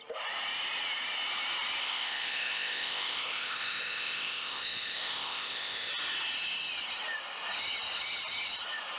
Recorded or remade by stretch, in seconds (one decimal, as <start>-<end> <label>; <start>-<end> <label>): 0.0-1.8 recorded; 1.8-5.9 remade; 5.9-9.0 recorded